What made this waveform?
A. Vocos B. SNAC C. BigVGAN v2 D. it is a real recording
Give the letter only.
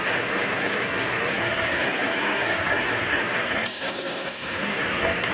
B